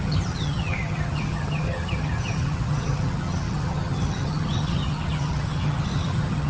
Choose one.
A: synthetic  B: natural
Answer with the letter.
A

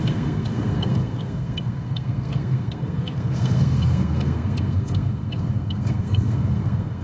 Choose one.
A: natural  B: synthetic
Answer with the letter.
B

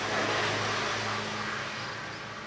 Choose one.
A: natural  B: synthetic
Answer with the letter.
A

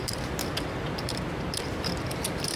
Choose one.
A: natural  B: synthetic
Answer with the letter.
B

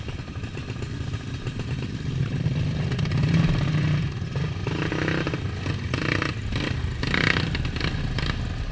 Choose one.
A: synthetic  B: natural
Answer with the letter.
B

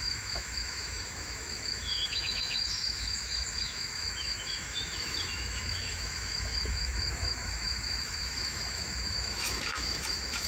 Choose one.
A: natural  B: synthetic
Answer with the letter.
B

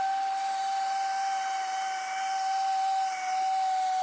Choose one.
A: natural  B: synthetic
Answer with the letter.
A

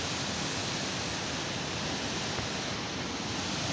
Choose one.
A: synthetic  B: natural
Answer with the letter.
B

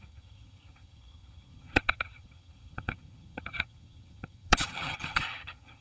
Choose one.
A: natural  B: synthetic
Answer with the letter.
B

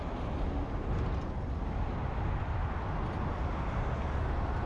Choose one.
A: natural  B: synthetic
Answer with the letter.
A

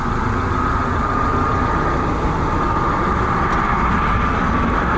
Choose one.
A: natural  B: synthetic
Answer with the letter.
A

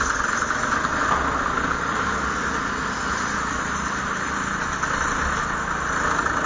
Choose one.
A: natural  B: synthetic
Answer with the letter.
A